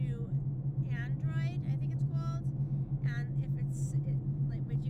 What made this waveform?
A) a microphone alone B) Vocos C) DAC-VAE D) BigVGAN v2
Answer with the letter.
A